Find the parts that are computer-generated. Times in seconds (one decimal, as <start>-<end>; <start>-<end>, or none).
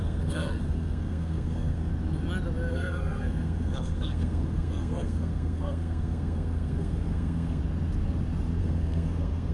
0.0-1.9; 2.7-7.6; 8.6-9.5